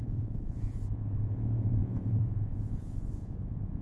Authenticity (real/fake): fake